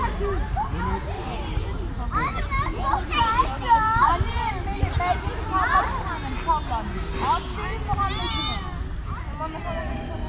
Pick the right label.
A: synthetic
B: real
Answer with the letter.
B